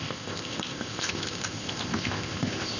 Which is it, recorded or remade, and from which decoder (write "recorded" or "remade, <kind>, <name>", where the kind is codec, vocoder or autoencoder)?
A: remade, codec, ZipCodec